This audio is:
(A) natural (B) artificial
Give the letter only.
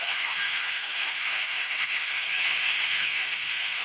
B